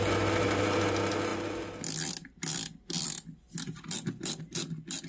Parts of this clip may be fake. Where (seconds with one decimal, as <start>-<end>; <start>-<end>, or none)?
none